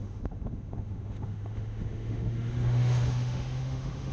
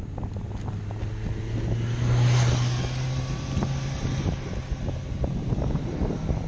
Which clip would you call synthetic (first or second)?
first